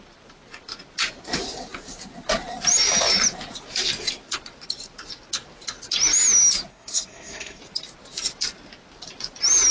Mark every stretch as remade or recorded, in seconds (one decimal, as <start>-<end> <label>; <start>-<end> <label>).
0.0-6.7 recorded; 6.7-7.6 remade; 7.6-9.7 recorded